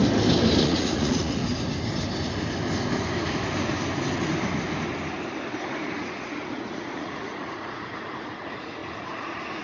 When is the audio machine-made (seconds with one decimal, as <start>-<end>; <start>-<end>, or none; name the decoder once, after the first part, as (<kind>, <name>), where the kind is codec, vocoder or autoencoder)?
0.6-1.4 (vocoder, Vocos); 5.9-9.6